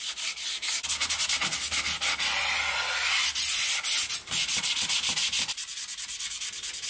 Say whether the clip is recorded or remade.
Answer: recorded